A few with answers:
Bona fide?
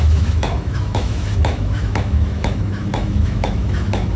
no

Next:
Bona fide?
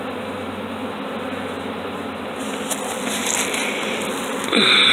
yes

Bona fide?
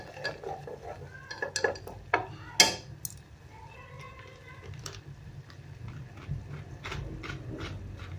yes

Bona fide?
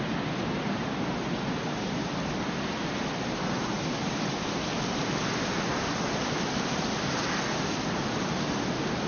yes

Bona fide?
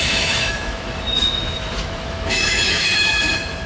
no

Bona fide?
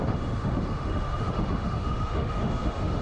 no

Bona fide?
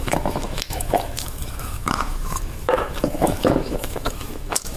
no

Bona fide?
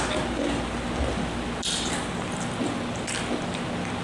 yes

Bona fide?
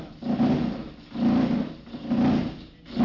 yes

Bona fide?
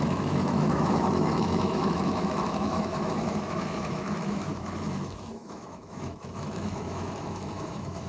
no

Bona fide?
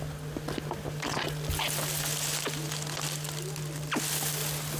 yes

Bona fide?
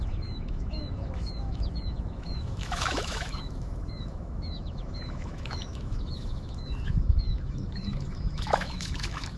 no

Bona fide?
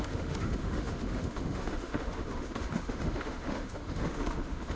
no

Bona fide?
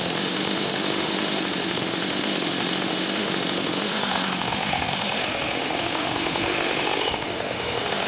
no